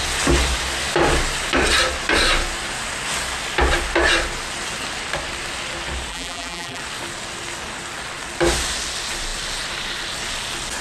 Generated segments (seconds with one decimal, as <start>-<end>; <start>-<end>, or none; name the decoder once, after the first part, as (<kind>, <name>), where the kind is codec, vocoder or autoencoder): 6.1-6.8 (vocoder, BigVGAN v2)